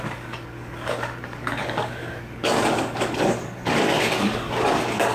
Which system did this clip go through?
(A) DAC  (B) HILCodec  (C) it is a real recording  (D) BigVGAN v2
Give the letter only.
A